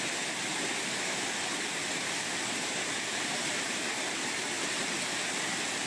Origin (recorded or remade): recorded